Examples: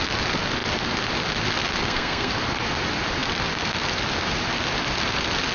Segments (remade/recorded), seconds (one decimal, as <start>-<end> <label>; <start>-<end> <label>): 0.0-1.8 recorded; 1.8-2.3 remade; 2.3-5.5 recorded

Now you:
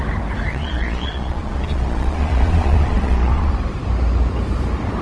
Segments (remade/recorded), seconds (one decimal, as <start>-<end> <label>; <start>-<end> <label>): 0.0-0.5 recorded; 0.5-3.5 remade; 3.5-5.0 recorded

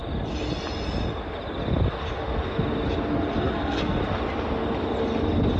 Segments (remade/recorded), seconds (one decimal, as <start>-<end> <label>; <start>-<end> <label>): 0.0-3.4 recorded; 3.4-4.0 remade; 4.0-5.6 recorded